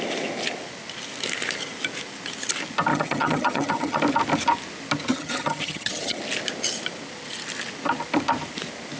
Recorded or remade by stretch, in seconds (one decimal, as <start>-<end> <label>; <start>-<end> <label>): 0.0-2.9 recorded; 2.9-4.0 remade; 4.0-5.1 recorded; 5.1-6.2 remade; 6.2-9.0 recorded